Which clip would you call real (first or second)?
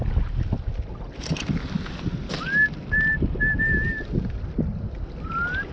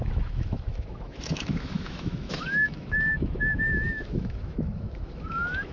first